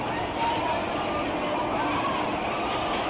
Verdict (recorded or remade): recorded